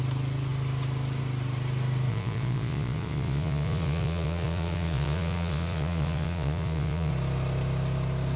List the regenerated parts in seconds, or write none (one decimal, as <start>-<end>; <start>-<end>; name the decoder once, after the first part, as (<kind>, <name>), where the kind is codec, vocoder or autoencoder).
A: 2.1-7.1 (vocoder, Vocos)